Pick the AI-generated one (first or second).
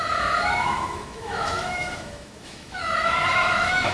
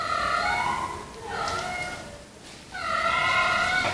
first